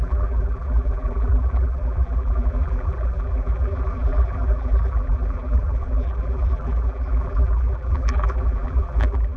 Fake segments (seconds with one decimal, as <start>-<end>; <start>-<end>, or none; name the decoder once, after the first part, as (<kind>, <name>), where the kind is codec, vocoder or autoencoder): 0.0-9.4 (vocoder, BigVGAN v2)